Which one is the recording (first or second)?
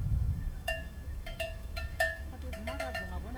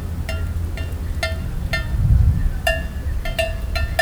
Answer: second